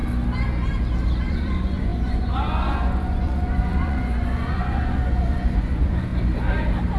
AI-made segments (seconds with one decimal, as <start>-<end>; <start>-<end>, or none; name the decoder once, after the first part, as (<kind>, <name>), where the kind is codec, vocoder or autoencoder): 1.3-6.1 (vocoder, Vocos)